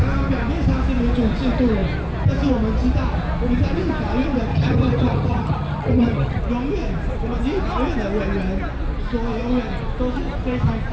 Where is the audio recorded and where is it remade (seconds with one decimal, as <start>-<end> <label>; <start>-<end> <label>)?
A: 0.0-4.5 recorded; 4.5-6.4 remade; 6.4-10.9 recorded